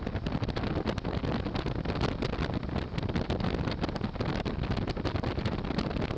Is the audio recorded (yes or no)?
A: yes